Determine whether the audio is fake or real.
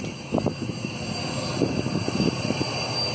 real